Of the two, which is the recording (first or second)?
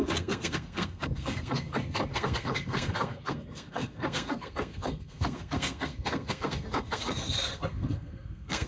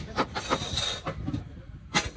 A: second